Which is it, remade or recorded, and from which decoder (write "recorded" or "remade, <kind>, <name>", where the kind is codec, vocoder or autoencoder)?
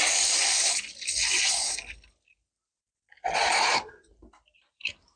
recorded